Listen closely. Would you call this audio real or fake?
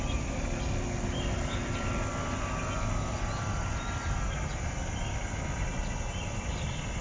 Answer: real